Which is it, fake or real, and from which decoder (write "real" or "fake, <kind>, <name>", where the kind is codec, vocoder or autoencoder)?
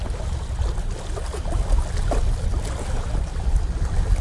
real